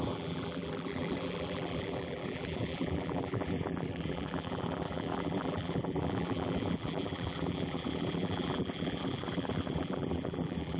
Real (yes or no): no